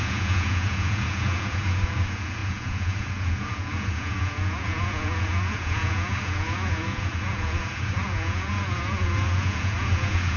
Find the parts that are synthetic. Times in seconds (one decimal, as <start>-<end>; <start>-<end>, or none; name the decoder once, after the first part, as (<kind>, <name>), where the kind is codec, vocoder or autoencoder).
0.0-10.4 (vocoder, Vocos)